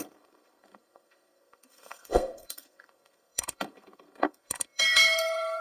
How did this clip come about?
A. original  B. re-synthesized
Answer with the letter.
B